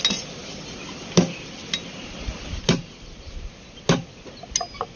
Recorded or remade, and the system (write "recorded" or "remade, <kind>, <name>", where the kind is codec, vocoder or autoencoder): recorded